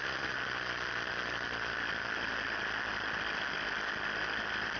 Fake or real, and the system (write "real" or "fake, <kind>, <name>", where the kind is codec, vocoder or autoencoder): real